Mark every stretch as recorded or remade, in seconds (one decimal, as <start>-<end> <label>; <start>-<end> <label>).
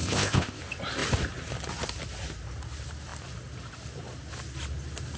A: 0.0-0.6 remade; 0.6-5.2 recorded